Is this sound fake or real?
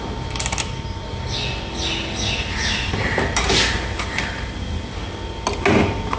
real